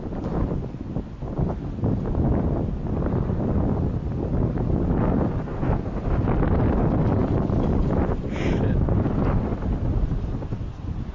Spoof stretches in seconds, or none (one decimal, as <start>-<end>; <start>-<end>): 7.2-9.2